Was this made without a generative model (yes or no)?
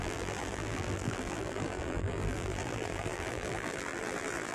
no